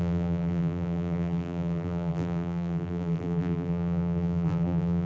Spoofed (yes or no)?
yes